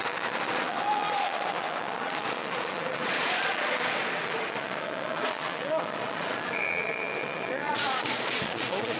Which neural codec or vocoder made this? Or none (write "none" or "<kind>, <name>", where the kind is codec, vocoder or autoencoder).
vocoder, Vocos